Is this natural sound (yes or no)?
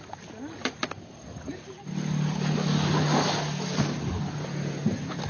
yes